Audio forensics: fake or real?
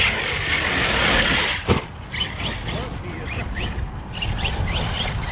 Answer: real